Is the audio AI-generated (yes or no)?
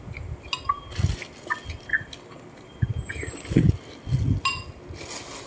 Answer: no